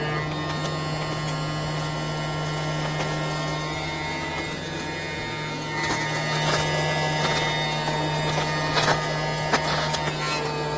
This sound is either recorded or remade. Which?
recorded